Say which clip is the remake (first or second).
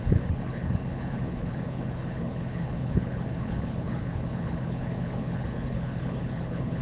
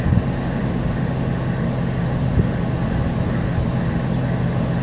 first